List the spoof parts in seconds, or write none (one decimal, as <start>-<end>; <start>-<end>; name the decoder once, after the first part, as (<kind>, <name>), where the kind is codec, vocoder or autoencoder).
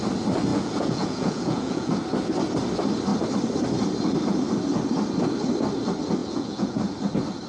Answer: 0.5-1.9 (vocoder, Vocos); 6.2-6.8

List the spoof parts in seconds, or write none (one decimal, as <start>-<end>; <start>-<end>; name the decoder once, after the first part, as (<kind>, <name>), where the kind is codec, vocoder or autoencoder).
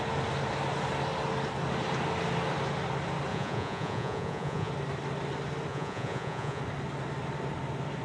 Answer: 3.3-4.7 (vocoder, Vocos); 5.7-6.6